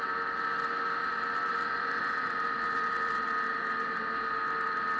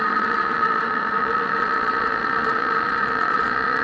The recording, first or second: first